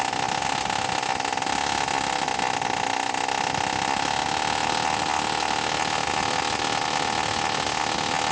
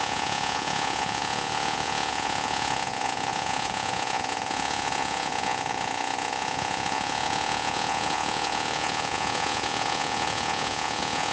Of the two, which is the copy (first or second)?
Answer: second